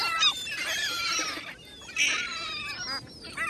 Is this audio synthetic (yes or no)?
no